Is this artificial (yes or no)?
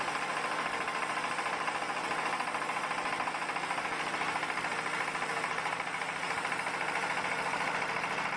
no